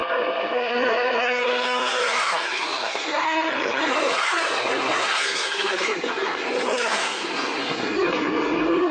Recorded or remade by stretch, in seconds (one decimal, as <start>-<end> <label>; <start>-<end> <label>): 0.0-8.9 remade